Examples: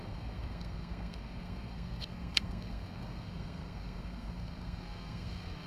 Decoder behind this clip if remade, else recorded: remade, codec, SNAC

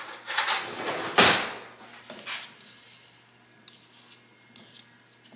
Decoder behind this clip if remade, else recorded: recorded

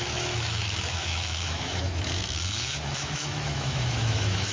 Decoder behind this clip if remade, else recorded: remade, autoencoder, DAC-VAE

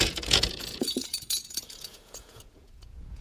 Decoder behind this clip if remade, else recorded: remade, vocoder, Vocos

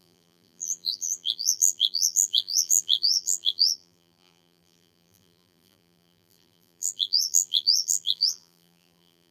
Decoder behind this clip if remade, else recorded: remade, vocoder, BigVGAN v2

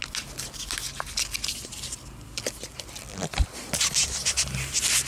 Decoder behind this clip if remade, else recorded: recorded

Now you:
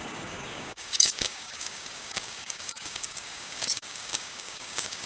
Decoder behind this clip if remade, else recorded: remade, codec, DAC